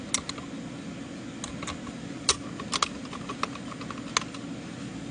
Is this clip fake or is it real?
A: real